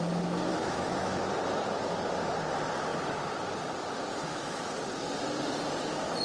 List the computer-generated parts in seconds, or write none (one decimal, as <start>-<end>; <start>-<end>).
0.5-1.3; 4.1-4.6